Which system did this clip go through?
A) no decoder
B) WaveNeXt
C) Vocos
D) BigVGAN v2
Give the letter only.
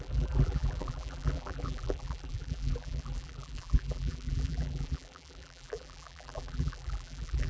D